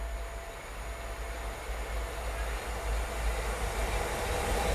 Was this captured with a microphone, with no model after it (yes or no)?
yes